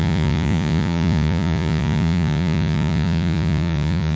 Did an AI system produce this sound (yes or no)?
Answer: yes